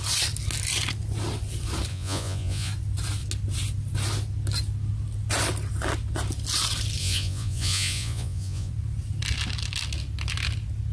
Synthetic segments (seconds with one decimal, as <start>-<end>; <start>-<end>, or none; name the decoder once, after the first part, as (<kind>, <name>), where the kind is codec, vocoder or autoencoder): 1.9-2.7 (vocoder, Vocos); 7.0-8.7